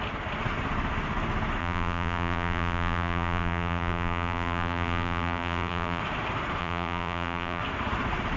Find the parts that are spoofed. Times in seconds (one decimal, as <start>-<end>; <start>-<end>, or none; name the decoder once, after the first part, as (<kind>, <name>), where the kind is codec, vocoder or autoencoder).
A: 1.6-6.0 (vocoder, BigVGAN v2); 6.6-7.6

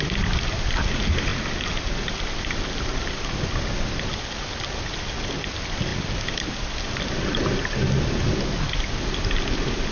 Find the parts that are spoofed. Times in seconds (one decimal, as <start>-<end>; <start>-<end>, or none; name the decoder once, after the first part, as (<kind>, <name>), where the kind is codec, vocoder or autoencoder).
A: none

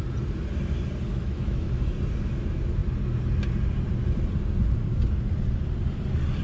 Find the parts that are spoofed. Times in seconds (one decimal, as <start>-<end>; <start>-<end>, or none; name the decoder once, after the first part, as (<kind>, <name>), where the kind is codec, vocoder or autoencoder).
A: 1.1-1.7 (autoencoder, DAC-VAE)

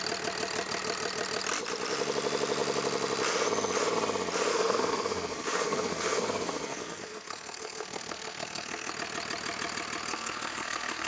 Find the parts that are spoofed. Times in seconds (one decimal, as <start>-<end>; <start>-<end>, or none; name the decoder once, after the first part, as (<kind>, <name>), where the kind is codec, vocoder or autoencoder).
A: 4.5-8.9 (codec, SNAC); 10.1-11.1